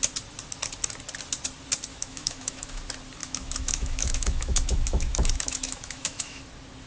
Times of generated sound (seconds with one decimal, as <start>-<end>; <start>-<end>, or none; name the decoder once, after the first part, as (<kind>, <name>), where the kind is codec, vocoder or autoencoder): 1.9-2.8 (autoencoder, DAC-VAE); 3.2-6.4

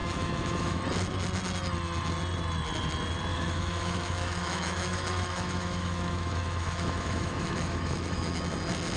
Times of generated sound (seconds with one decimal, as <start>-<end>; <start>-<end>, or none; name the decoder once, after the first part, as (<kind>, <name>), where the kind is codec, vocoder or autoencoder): 0.0-0.8 (autoencoder, DAC-VAE); 3.3-8.4

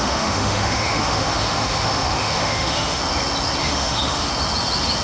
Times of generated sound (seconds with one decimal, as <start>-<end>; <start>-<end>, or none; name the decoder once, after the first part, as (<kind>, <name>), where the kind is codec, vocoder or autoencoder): 0.0-3.0 (autoencoder, DAC-VAE); 3.6-4.3

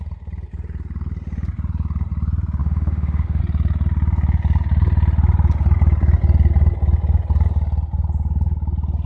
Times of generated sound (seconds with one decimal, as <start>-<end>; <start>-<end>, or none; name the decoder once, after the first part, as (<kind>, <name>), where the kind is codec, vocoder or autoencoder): 2.6-3.4 (autoencoder, DAC-VAE)